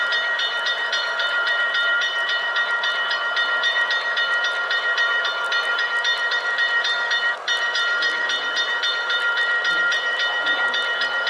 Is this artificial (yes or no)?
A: yes